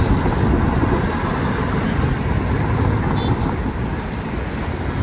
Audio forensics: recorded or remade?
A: recorded